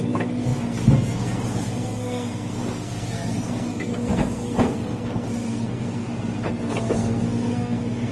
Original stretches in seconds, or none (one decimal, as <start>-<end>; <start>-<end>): none